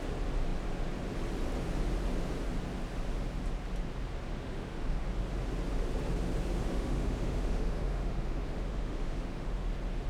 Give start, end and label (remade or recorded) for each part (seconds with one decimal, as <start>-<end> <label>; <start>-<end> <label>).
0.0-4.3 recorded; 4.3-5.0 remade; 5.0-6.7 recorded; 6.7-9.7 remade; 9.7-10.1 recorded